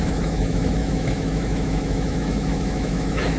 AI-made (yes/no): yes